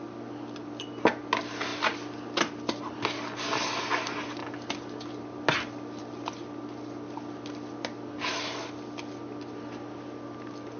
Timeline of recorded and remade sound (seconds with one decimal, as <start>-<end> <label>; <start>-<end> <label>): 0.0-10.8 recorded